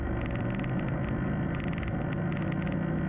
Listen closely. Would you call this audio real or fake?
real